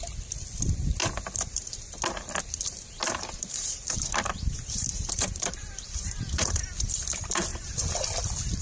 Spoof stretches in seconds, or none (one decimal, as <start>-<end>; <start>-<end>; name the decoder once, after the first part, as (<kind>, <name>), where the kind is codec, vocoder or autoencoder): 1.0-1.8 (vocoder, BigVGAN v2); 3.0-6.6; 7.5-8.0